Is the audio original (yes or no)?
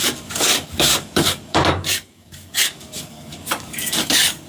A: no